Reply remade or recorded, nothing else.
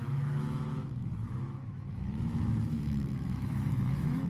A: remade